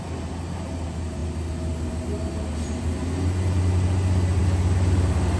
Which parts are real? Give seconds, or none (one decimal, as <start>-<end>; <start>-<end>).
0.0-5.4